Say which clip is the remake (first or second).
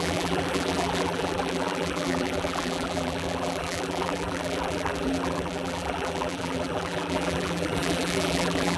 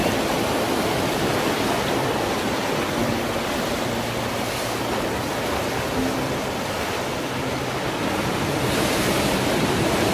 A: first